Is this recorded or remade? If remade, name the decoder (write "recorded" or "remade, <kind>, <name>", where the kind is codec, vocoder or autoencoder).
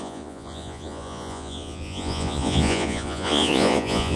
remade, vocoder, Vocos